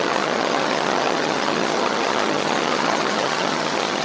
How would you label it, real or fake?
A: fake